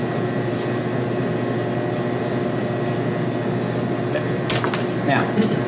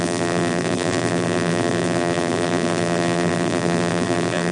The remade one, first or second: second